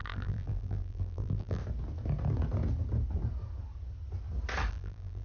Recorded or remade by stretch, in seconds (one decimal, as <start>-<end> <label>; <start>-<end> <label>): 0.0-1.6 remade; 1.6-4.7 recorded; 4.7-5.2 remade